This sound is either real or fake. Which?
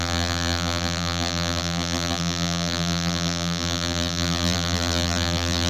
fake